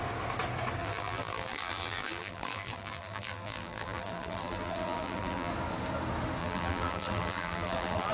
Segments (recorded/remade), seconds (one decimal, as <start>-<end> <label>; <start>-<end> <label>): 0.0-0.8 recorded; 0.8-5.5 remade; 5.5-6.4 recorded; 6.4-8.1 remade